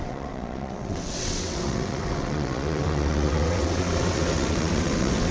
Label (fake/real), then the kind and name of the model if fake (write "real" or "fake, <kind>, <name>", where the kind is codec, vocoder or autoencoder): fake, vocoder, WaveNeXt